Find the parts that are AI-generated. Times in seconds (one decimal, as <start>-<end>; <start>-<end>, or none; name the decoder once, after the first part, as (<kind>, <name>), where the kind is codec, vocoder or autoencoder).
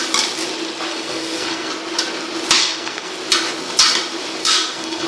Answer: 0.9-1.7 (codec, SNAC); 2.6-3.1; 4.4-5.1